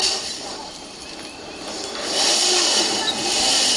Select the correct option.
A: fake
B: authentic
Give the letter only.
B